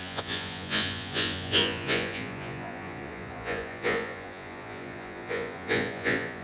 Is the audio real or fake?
fake